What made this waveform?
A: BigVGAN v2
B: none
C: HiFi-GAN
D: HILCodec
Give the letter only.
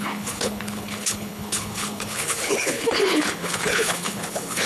D